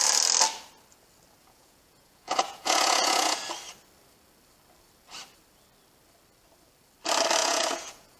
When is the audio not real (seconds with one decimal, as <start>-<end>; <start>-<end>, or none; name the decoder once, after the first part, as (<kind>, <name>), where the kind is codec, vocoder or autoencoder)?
1.4-3.4 (vocoder, Vocos); 7.4-8.2